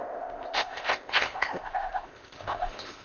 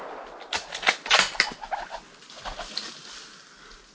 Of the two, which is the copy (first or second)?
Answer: first